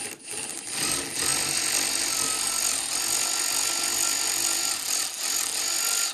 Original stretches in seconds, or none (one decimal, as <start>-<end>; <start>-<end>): 0.0-6.1